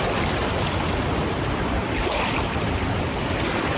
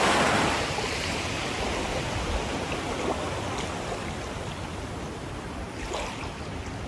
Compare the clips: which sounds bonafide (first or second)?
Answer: second